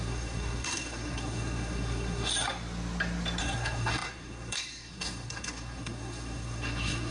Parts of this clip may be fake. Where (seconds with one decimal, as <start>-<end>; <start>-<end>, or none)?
0.0-2.3; 3.4-7.1